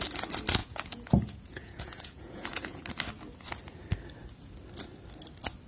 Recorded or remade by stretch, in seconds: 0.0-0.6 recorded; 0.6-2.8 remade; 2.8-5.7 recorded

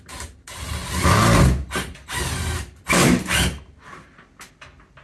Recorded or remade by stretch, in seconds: 0.0-5.0 recorded

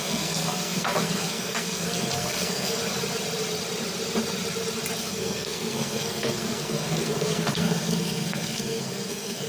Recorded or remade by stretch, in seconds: 0.0-2.8 remade; 2.8-5.0 recorded; 5.0-9.5 remade

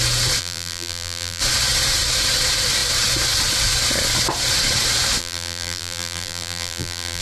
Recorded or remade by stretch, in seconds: 0.0-0.4 recorded; 0.4-1.4 remade; 1.4-5.2 recorded; 5.2-7.2 remade

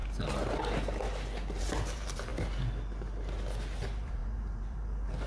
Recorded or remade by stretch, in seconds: 0.0-1.6 recorded; 1.6-2.3 remade; 2.3-3.8 recorded; 3.8-5.3 remade

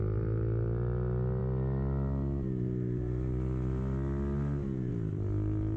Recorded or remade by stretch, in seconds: 0.0-5.8 recorded

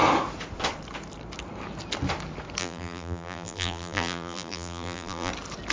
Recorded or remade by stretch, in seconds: 0.0-2.6 recorded; 2.6-5.3 remade; 5.3-5.7 recorded